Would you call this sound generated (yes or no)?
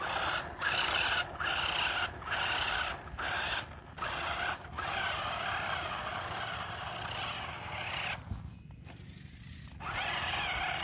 no